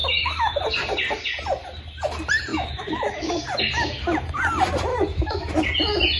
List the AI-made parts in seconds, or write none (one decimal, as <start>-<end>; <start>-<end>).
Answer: 0.0-0.6; 2.5-3.3; 4.9-5.5